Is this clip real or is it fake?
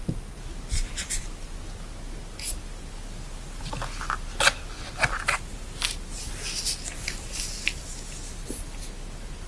real